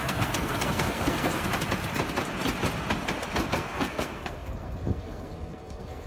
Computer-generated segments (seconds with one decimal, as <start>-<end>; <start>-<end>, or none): 0.0-1.5; 3.5-6.1